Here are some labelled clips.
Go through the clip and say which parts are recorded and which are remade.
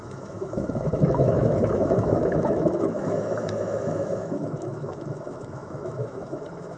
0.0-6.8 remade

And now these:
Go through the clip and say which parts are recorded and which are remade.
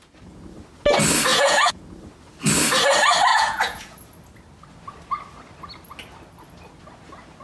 0.0-1.3 recorded; 1.3-1.8 remade; 1.8-3.3 recorded; 3.3-4.0 remade; 4.0-7.4 recorded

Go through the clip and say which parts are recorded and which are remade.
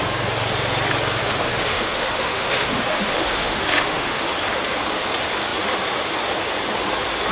0.0-1.2 recorded; 1.2-4.3 remade; 4.3-7.3 recorded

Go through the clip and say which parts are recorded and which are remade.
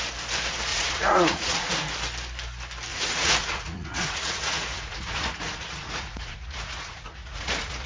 0.0-0.7 recorded; 0.7-1.7 remade; 1.7-2.9 recorded; 2.9-7.9 remade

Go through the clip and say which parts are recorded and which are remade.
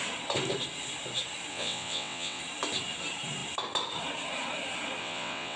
0.0-1.5 recorded; 1.5-2.4 remade; 2.4-5.0 recorded; 5.0-5.6 remade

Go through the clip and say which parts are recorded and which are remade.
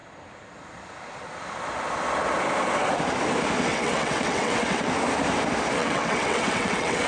0.0-3.7 recorded; 3.7-4.9 remade; 4.9-5.8 recorded; 5.8-7.1 remade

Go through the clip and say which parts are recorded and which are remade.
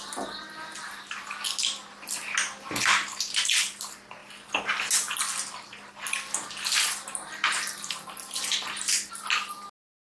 0.0-10.1 recorded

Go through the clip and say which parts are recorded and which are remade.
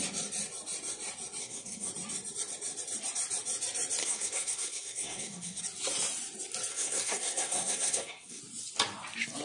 0.0-1.4 recorded; 1.4-1.9 remade; 1.9-4.0 recorded; 4.0-5.6 remade; 5.6-6.7 recorded; 6.7-8.4 remade; 8.4-9.4 recorded